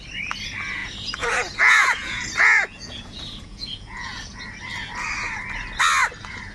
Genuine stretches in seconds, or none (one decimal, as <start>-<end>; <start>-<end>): 0.0-0.8; 4.4-6.5